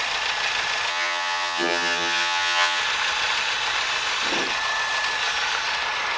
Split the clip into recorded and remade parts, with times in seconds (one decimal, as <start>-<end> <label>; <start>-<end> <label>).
0.0-0.9 recorded; 0.9-2.8 remade; 2.8-6.2 recorded